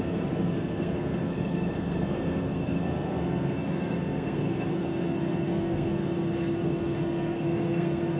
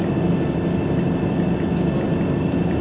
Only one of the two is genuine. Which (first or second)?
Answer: second